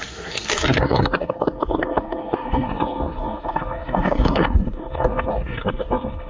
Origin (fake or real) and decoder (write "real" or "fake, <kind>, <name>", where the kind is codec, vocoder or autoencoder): fake, codec, SNAC